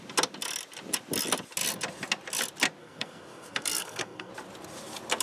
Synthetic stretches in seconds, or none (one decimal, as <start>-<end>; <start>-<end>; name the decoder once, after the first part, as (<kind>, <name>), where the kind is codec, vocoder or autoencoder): 2.8-4.3 (codec, SNAC)